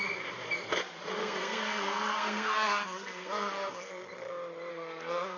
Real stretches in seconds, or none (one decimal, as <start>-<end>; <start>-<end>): 0.0-1.2; 3.9-4.7